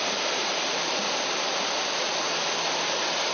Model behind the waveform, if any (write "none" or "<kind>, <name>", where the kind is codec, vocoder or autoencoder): none